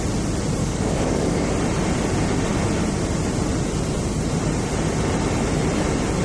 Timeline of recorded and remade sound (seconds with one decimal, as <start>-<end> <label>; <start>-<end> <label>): 0.0-0.6 recorded; 0.6-1.5 remade; 1.5-6.2 recorded